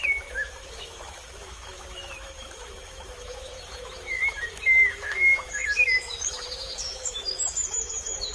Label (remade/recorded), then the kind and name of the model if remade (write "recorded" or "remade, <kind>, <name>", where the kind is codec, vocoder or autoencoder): remade, autoencoder, DAC-VAE